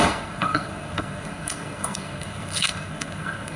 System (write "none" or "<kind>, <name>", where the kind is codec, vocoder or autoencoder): codec, SNAC